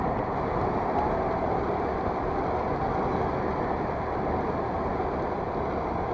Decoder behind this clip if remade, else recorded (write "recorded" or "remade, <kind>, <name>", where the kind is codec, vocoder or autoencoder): recorded